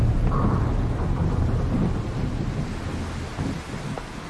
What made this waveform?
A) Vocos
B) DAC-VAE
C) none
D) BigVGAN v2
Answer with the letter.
C